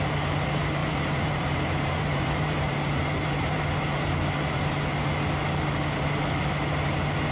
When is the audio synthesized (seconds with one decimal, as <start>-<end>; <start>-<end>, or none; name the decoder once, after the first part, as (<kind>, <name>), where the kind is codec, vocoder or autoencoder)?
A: 0.8-3.6 (vocoder, BigVGAN v2)